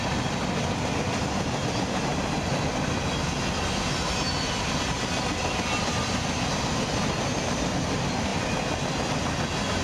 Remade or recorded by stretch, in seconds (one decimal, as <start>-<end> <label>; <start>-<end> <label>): 0.0-9.8 recorded